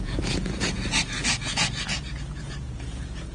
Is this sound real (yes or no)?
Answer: no